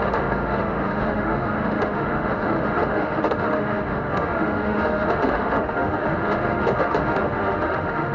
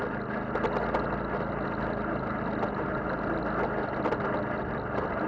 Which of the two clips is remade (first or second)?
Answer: first